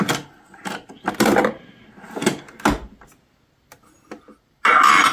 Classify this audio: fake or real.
real